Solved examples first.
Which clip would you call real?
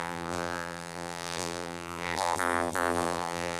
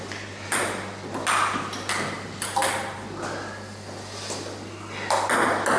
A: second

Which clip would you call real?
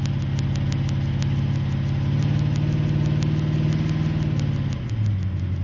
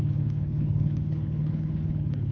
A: first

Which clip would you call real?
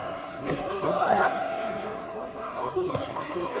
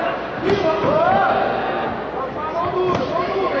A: second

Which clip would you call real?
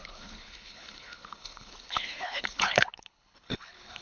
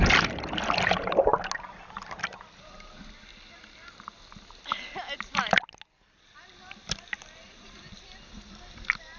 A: second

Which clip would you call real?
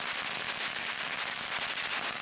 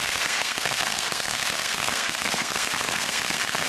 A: first